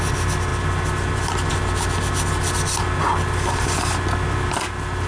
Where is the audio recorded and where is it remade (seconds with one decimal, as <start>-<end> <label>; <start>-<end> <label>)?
0.0-5.1 recorded